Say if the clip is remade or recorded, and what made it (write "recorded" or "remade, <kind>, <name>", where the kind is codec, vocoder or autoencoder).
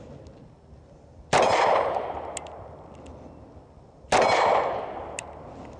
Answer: recorded